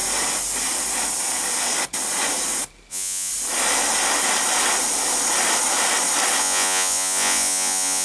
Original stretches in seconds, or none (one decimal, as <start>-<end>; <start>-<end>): 0.0-2.9; 3.3-6.4